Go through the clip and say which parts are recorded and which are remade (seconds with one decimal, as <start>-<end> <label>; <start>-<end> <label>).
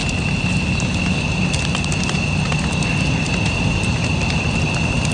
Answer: 0.0-5.1 recorded